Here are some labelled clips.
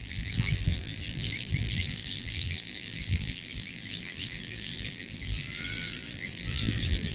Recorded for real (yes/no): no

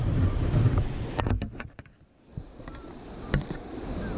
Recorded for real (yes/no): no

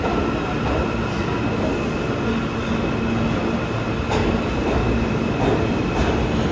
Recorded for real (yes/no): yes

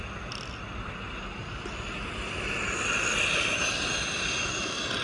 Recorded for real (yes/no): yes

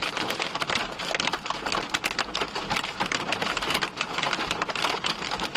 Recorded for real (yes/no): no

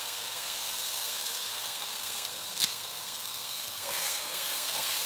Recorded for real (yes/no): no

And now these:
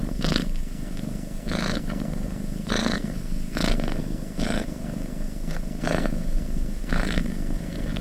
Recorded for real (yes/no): no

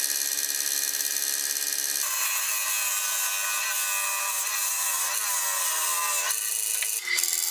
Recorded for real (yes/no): yes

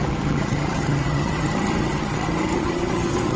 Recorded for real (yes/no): no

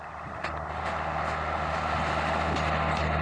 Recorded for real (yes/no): yes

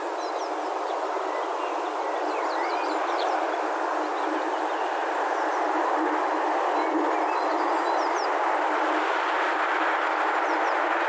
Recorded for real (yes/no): yes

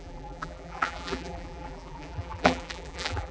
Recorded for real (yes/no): no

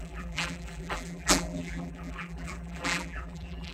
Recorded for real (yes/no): no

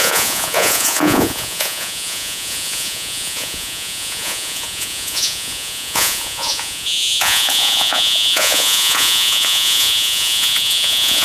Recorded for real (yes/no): no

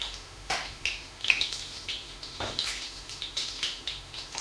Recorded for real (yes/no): no